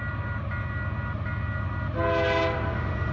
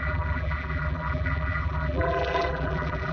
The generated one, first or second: second